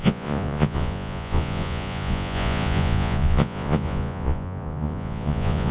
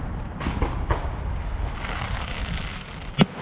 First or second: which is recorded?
second